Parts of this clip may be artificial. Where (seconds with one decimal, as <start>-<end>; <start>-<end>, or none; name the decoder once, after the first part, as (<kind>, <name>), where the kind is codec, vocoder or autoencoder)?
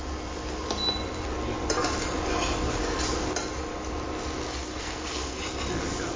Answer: 4.7-5.4 (codec, SNAC)